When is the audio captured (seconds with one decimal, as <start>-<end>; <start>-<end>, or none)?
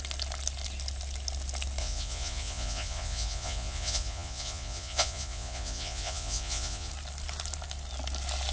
0.0-1.8; 6.9-8.5